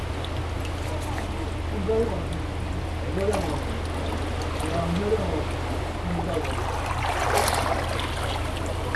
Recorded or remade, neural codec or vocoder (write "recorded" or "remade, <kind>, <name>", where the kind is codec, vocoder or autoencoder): recorded